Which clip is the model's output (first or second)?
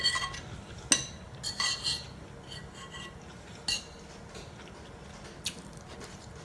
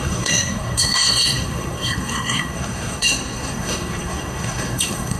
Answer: second